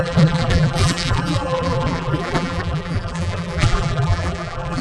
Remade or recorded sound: remade